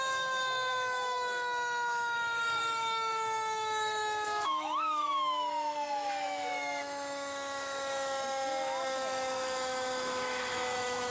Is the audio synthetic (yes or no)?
yes